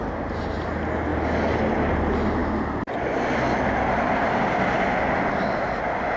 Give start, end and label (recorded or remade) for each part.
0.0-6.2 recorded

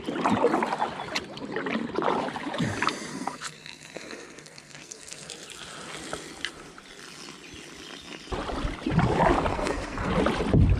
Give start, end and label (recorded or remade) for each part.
0.0-3.1 recorded; 3.1-5.3 remade; 5.3-9.5 recorded; 9.5-10.1 remade; 10.1-10.8 recorded

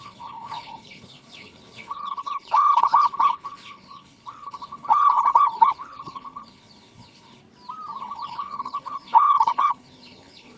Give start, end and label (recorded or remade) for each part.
0.0-7.4 remade; 7.4-8.0 recorded; 8.0-10.6 remade

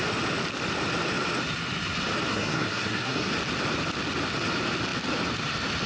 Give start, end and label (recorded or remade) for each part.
0.0-2.3 recorded; 2.3-3.3 remade; 3.3-5.9 recorded

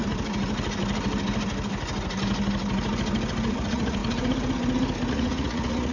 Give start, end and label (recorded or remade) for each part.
0.0-3.5 recorded; 3.5-4.0 remade; 4.0-5.1 recorded; 5.1-5.9 remade